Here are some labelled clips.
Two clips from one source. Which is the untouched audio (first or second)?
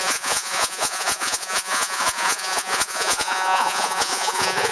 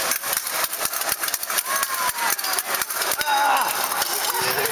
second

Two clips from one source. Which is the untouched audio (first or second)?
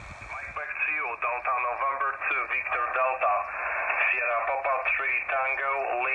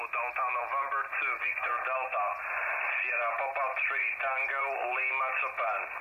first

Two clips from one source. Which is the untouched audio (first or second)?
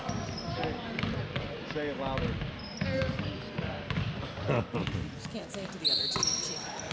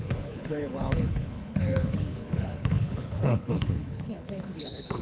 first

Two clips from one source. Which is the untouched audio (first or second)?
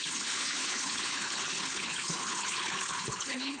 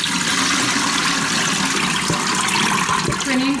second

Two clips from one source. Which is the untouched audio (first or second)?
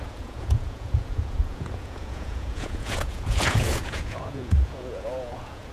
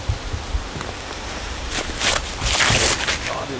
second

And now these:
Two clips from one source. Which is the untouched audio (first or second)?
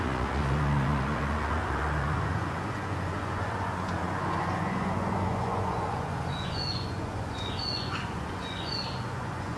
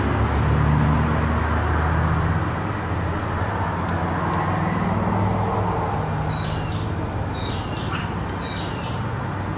second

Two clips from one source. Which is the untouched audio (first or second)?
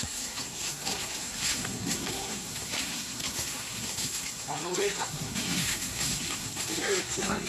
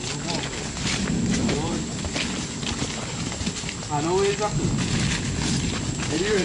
second